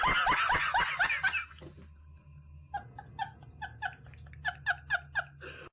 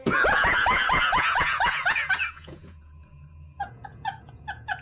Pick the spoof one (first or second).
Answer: second